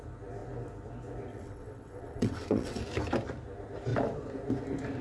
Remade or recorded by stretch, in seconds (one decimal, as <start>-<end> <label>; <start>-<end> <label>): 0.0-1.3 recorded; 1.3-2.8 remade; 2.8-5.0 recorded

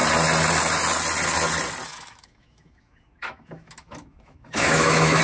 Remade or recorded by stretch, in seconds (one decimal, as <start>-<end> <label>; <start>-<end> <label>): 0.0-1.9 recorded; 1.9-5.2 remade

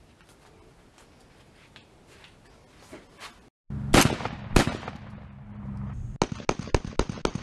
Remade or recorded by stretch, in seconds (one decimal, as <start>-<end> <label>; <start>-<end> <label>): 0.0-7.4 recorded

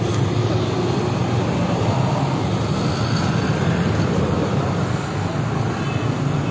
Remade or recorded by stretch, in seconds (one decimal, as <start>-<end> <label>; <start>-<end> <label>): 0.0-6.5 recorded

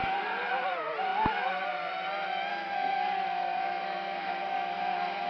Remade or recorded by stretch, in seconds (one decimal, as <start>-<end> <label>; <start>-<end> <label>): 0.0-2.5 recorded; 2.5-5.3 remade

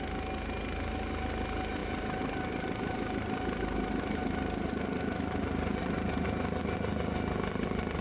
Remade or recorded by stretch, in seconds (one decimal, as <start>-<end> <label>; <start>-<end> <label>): 0.0-8.0 recorded